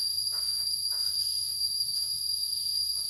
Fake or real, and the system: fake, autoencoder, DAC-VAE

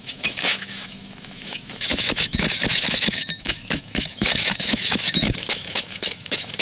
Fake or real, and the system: fake, autoencoder, DAC-VAE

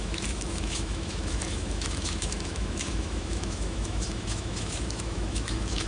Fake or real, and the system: fake, autoencoder, DAC-VAE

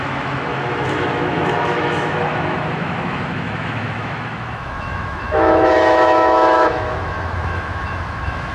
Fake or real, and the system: fake, autoencoder, DAC-VAE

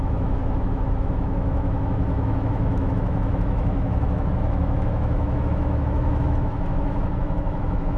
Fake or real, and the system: fake, autoencoder, DAC-VAE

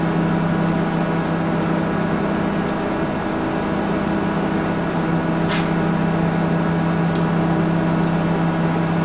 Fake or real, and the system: real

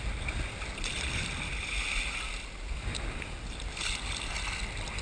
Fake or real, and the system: real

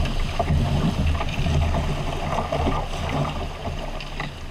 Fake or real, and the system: real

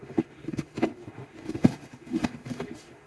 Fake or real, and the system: fake, autoencoder, DAC-VAE